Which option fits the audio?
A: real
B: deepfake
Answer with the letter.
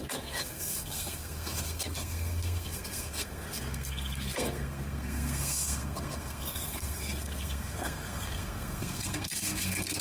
B